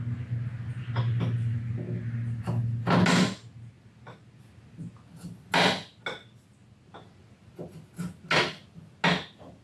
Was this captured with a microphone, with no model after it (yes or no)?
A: yes